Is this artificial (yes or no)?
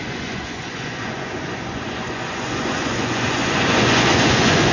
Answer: yes